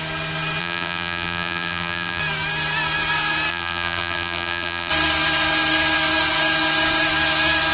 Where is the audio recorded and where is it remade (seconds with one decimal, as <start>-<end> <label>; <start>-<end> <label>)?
0.0-0.6 recorded; 0.6-2.2 remade; 2.2-3.5 recorded; 3.5-4.9 remade; 4.9-7.7 recorded